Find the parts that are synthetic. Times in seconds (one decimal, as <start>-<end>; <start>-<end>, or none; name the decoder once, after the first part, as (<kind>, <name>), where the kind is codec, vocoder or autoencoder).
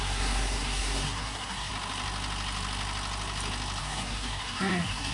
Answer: 0.0-1.7 (codec, SNAC); 3.8-5.1